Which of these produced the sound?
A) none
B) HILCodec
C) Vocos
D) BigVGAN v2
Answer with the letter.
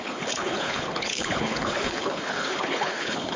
B